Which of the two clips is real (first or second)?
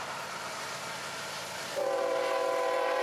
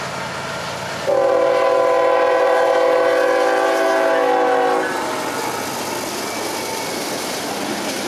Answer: second